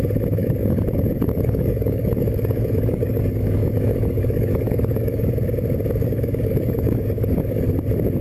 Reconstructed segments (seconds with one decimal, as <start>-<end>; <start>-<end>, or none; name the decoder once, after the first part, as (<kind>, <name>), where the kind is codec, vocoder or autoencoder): 0.4-5.3 (codec, DAC); 6.0-7.7

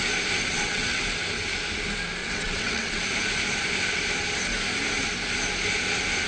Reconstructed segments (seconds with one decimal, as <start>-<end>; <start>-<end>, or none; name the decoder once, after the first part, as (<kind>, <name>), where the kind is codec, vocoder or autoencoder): 0.5-1.0 (vocoder, WaveNeXt); 2.2-3.0

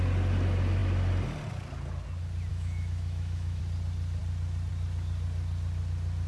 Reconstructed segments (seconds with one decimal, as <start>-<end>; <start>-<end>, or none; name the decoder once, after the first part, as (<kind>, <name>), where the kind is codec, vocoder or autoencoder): 2.5-3.6 (autoencoder, DAC-VAE)

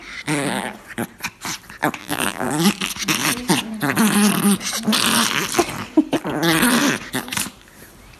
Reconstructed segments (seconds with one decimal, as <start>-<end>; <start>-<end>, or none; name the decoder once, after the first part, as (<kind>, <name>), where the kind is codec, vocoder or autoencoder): 2.0-2.5 (vocoder, BigVGAN v2)